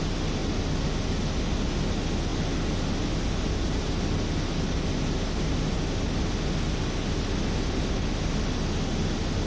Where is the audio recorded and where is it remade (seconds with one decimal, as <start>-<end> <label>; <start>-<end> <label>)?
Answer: 0.0-9.5 recorded